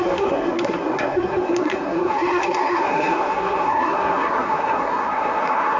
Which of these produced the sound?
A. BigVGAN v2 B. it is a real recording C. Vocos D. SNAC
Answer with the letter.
D